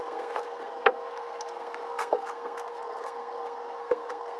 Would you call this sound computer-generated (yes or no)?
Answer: yes